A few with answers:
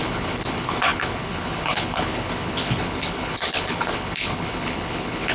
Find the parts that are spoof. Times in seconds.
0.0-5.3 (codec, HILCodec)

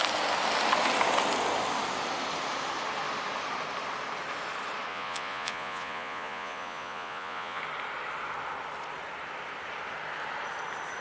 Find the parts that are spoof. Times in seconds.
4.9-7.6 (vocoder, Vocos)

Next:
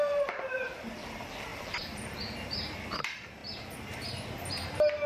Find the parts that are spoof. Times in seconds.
0.0-3.4 (vocoder, BigVGAN v2); 4.5-5.1

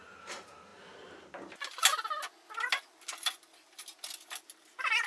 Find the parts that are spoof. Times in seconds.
none

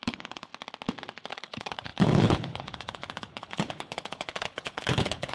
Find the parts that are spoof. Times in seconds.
0.0-0.5 (codec, HILCodec); 1.3-5.3

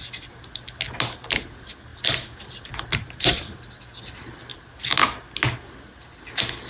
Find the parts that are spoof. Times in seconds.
none

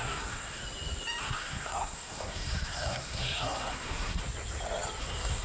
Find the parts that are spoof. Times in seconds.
0.0-0.6 (codec, SNAC); 1.2-4.2; 5.0-5.4

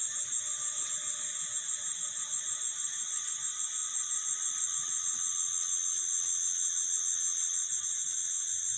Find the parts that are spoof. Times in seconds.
none